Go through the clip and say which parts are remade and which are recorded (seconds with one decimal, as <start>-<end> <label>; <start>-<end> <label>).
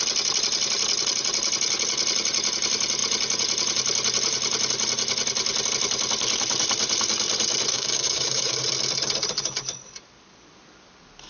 0.0-7.7 recorded; 7.7-8.6 remade; 8.6-11.3 recorded